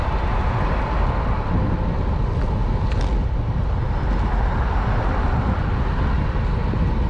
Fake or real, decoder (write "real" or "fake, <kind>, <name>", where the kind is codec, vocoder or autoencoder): real